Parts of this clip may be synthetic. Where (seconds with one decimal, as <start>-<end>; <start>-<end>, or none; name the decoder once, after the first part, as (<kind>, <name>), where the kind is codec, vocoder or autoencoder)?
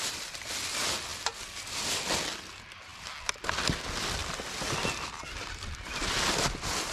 none